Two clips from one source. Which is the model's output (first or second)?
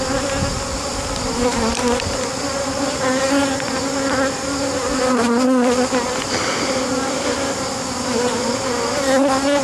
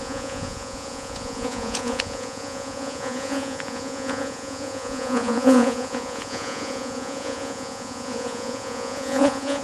second